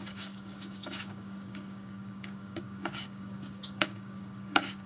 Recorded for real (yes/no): no